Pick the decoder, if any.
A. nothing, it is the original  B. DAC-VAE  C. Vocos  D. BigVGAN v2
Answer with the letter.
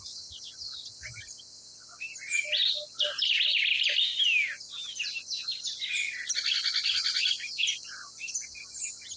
A